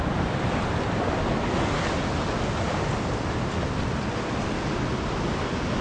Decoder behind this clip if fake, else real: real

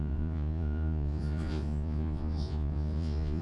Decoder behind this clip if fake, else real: fake, vocoder, Vocos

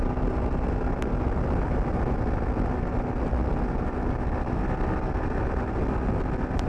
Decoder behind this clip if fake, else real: real